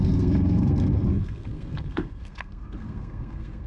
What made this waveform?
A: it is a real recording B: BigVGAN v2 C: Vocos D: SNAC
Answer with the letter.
D